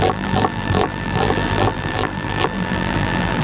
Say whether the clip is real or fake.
fake